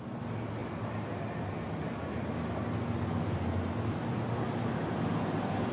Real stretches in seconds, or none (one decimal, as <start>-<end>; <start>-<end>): 0.0-5.7